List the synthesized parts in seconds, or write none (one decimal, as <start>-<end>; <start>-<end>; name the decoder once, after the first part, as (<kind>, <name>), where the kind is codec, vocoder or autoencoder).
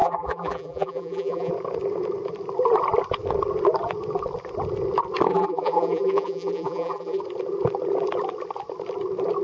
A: 0.0-1.5 (vocoder, BigVGAN v2); 5.3-7.2